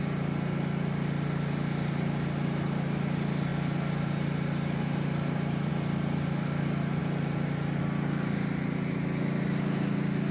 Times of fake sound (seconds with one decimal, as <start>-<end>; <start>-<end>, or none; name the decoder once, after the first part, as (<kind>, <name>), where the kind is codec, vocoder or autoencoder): none